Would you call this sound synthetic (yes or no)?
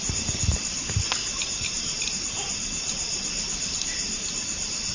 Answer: no